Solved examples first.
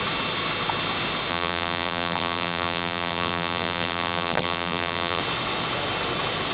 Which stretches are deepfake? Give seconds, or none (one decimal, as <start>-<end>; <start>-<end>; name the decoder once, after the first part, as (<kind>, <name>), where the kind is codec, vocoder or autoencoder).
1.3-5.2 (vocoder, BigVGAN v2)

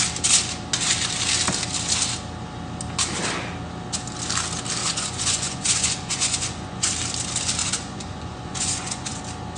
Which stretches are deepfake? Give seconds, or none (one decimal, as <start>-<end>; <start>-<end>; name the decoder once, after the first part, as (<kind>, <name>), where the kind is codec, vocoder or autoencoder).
4.8-6.9 (vocoder, Vocos); 7.6-9.2

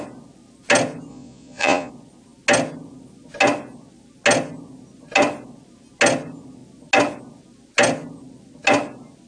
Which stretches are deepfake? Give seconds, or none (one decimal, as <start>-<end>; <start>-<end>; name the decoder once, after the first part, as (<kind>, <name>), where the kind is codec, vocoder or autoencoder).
1.1-1.9 (vocoder, Vocos)

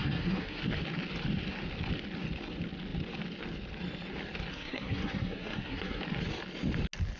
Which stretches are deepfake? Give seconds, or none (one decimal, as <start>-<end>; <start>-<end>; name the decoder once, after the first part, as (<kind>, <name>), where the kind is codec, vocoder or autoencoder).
0.0-0.6 (codec, SNAC); 4.5-6.0

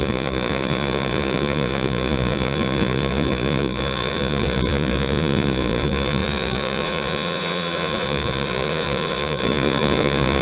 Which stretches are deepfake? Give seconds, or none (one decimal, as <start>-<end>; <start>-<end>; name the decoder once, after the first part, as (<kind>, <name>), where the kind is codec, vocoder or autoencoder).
0.0-10.4 (vocoder, Vocos)

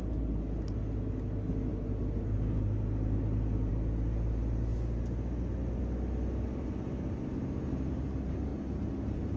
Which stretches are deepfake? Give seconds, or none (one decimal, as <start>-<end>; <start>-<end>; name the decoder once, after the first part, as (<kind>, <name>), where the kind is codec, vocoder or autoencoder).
none